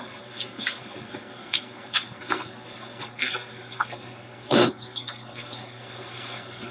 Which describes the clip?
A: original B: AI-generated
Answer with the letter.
B